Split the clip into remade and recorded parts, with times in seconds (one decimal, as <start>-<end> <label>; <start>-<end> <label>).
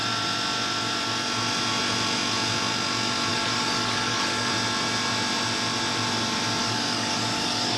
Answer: 0.0-3.3 recorded; 3.3-4.5 remade; 4.5-6.6 recorded; 6.6-7.8 remade